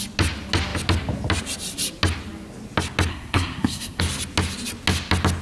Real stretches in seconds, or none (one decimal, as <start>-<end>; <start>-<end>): 0.0-3.1; 4.0-5.4